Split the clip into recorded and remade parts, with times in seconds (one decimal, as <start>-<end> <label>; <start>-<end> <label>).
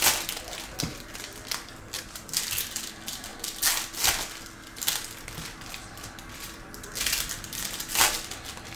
0.0-0.9 recorded; 0.9-2.3 remade; 2.3-8.8 recorded